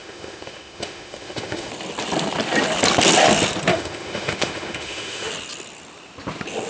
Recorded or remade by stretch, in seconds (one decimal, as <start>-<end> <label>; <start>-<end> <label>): 0.0-1.7 remade; 1.7-3.7 recorded; 3.7-5.3 remade; 5.3-6.7 recorded